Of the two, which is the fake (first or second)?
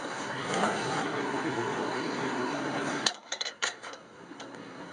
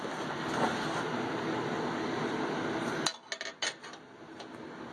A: first